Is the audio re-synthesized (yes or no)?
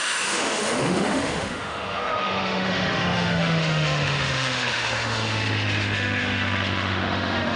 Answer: yes